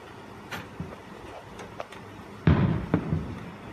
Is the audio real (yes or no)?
yes